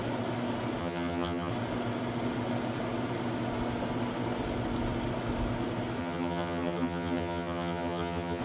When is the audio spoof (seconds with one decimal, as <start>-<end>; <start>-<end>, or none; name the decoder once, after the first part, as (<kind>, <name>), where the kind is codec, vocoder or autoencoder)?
0.8-1.5 (vocoder, HiFi-GAN); 6.0-8.4